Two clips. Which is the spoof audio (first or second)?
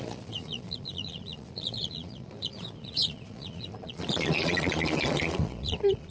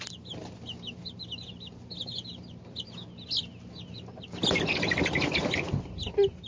first